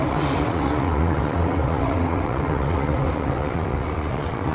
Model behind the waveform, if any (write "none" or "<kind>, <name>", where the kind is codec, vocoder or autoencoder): vocoder, WaveNeXt